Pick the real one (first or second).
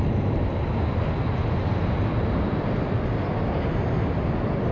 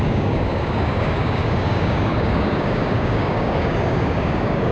first